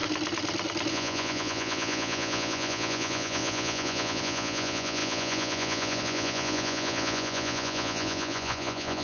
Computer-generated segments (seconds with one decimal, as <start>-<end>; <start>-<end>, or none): 0.9-9.0